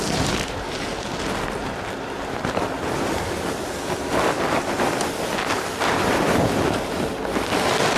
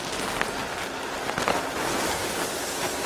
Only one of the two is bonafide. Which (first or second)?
second